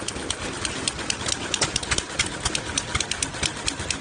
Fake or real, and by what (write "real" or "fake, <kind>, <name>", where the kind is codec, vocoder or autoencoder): real